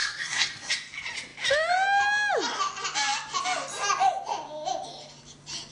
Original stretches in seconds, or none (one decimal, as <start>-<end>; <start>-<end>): 0.7-5.7